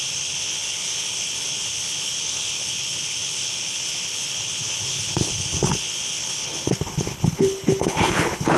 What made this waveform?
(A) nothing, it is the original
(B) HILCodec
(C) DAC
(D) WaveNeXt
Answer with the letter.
B